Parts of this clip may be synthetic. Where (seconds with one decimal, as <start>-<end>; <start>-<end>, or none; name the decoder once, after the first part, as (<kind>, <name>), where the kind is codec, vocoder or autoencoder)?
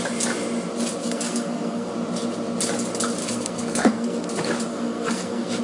1.0-1.9 (codec, SNAC); 3.2-4.3; 4.7-5.6